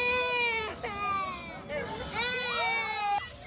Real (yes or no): yes